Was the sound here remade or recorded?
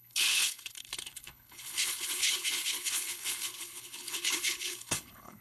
remade